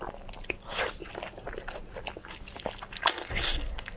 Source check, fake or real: real